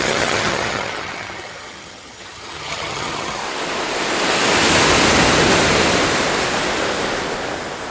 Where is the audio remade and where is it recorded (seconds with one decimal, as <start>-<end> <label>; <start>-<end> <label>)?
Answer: 0.0-3.4 remade; 3.4-7.9 recorded